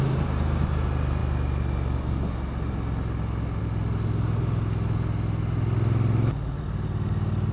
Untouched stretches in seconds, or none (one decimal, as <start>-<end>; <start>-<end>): 0.0-7.5